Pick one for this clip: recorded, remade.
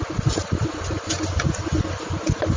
recorded